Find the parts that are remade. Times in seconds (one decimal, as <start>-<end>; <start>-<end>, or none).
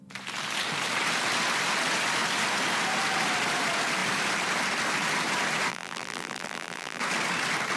5.7-7.0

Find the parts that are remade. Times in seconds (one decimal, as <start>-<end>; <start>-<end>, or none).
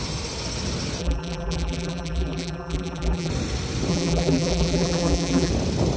1.0-3.3; 3.9-5.5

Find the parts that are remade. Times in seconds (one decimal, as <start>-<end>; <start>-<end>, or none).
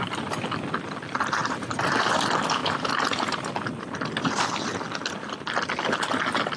1.4-2.1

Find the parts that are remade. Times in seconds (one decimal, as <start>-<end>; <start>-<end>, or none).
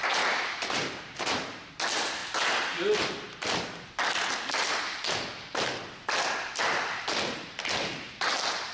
0.0-1.6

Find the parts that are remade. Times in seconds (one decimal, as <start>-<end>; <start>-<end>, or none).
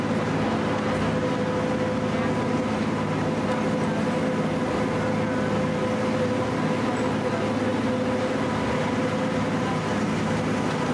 none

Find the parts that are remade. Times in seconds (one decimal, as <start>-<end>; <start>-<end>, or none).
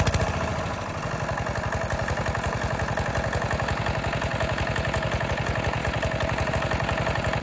none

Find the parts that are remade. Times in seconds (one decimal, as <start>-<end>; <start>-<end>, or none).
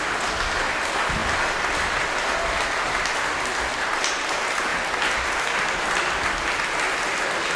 none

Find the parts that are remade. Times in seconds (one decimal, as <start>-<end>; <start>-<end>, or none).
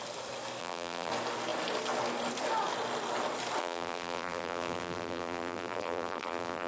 0.6-1.1; 3.6-6.7